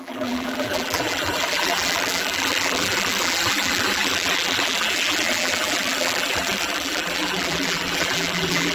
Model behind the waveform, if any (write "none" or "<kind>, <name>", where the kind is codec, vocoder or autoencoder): vocoder, BigVGAN v2